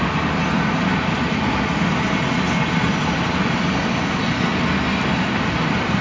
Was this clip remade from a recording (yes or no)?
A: no